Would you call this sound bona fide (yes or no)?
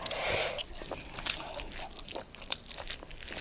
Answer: yes